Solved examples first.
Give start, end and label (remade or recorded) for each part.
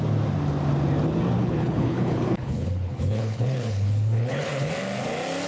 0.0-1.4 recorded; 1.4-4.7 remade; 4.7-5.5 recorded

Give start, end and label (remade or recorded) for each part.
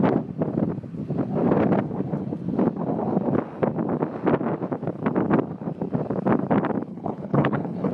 0.0-6.9 recorded; 6.9-7.9 remade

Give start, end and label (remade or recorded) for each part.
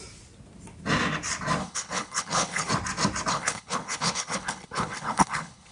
0.0-1.6 recorded; 1.6-2.7 remade; 2.7-3.3 recorded; 3.3-5.7 remade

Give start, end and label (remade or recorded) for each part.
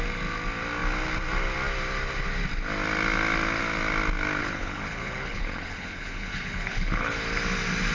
0.0-4.4 recorded; 4.4-7.2 remade; 7.2-7.9 recorded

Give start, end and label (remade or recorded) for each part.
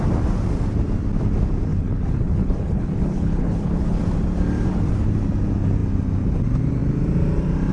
0.0-1.7 recorded; 1.7-4.0 remade; 4.0-7.7 recorded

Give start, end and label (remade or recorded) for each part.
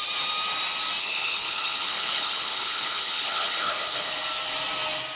0.0-1.0 recorded; 1.0-4.1 remade; 4.1-5.2 recorded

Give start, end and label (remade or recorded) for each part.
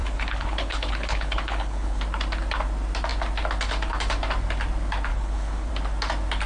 0.0-2.0 remade; 2.0-5.1 recorded; 5.1-5.7 remade; 5.7-6.5 recorded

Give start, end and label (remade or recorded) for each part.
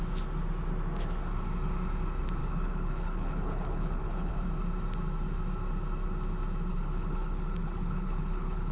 0.0-2.4 recorded; 2.4-4.3 remade; 4.3-6.7 recorded; 6.7-8.7 remade